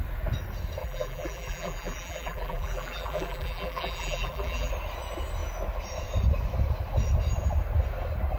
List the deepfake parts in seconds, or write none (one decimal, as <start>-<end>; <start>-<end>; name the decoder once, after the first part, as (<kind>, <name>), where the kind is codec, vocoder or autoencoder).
0.8-4.7 (vocoder, BigVGAN v2)